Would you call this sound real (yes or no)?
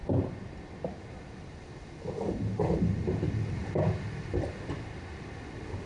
yes